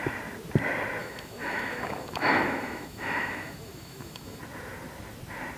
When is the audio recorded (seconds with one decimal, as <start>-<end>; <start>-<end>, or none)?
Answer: 0.0-1.0; 4.4-5.6